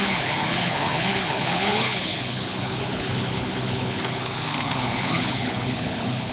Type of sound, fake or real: fake